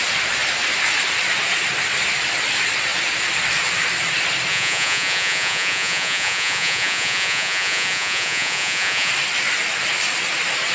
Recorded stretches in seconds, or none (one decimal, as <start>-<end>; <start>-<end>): 0.0-4.5; 9.1-10.7